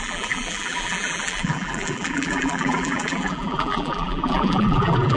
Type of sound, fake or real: fake